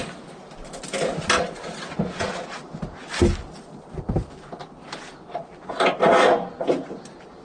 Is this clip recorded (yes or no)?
yes